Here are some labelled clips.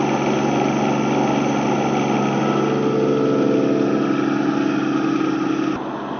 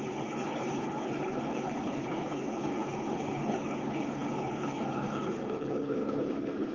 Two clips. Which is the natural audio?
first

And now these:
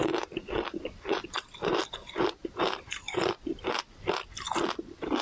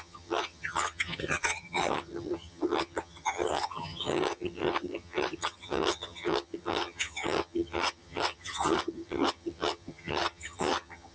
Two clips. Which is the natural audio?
first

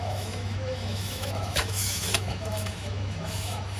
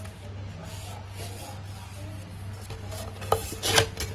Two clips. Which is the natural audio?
second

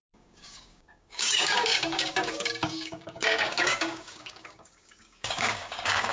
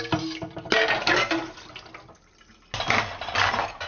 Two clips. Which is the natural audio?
second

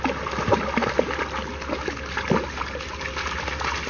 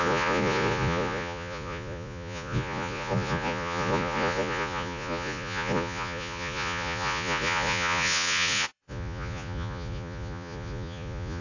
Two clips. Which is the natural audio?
first